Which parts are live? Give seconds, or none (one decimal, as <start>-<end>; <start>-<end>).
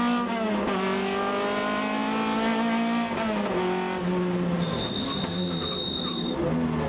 0.0-6.9